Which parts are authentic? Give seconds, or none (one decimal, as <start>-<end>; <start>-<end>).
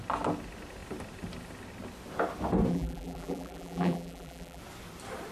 0.0-2.7; 4.6-5.3